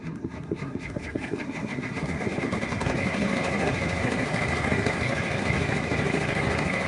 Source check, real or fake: fake